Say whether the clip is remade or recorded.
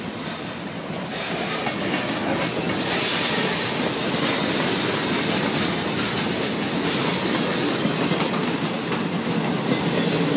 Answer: recorded